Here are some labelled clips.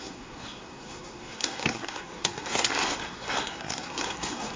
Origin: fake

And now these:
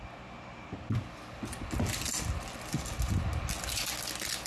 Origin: real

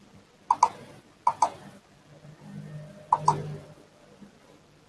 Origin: real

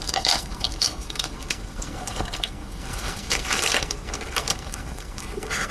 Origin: fake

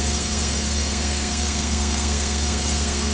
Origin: fake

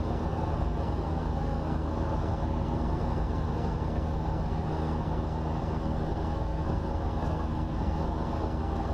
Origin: fake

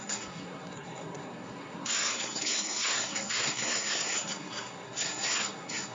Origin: fake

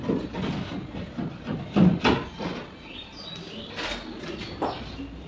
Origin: real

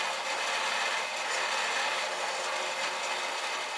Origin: real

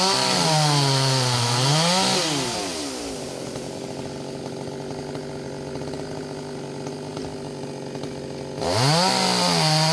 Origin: real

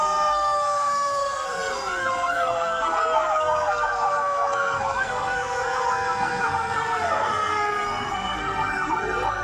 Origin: fake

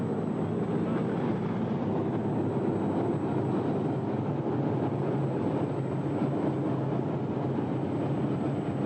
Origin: real